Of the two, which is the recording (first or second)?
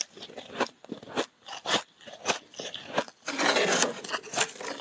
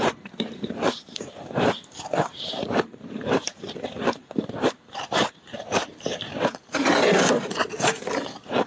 first